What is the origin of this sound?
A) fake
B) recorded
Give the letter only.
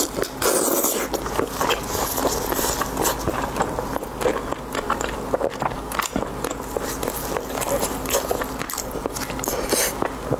B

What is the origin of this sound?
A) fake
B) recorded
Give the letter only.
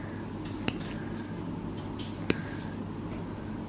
B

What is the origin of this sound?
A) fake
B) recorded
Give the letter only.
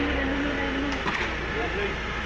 B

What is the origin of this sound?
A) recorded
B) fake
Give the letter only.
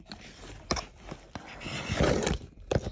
A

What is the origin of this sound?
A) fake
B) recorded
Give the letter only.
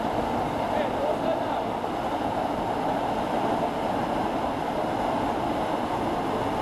B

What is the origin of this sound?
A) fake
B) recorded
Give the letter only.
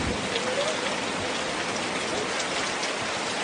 B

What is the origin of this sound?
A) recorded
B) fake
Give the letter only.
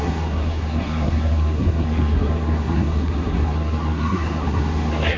B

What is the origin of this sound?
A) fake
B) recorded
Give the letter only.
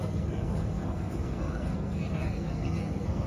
A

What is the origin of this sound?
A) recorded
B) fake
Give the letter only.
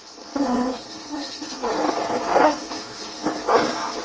B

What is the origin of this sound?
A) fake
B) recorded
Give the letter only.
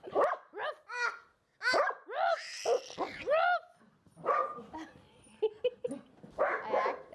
B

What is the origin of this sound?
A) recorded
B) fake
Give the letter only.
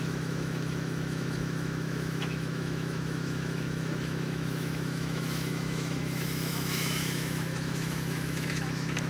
B